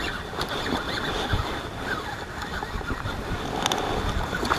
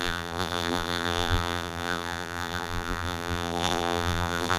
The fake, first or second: second